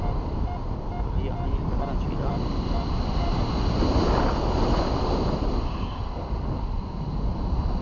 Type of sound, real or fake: real